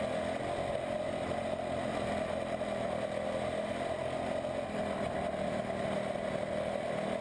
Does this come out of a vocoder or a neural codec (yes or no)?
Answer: no